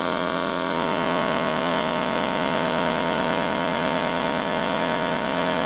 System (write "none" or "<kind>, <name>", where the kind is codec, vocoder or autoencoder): vocoder, Vocos